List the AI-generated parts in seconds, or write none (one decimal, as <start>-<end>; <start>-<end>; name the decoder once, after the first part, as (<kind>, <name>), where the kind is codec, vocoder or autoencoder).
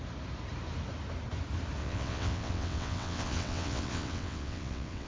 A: 1.8-5.1 (vocoder, WaveNeXt)